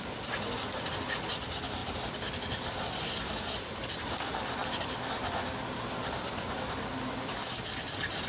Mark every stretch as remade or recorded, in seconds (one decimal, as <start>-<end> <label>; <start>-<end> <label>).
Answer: 0.0-8.3 recorded